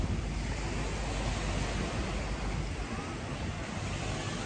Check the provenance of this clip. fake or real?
real